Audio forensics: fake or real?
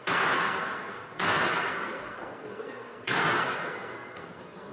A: fake